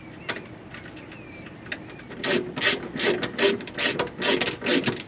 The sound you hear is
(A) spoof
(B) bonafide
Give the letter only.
B